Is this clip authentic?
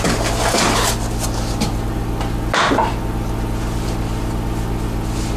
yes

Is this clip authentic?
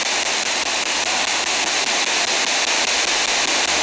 yes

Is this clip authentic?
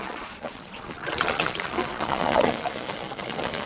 no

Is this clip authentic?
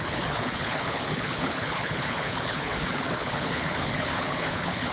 no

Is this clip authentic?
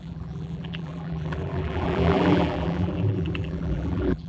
no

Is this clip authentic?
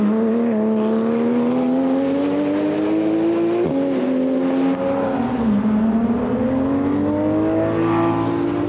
yes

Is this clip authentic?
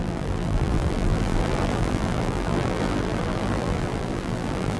no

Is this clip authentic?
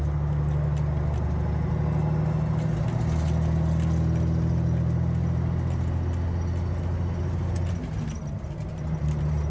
yes